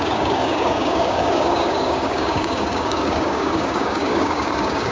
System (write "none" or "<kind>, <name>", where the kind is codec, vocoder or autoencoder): codec, DAC